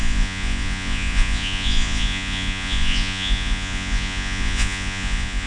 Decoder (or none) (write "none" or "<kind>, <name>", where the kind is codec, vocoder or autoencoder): vocoder, Vocos